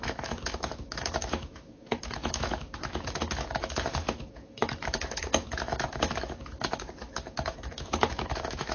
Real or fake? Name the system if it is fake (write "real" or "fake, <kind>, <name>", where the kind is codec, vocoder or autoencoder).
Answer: fake, autoencoder, DAC-VAE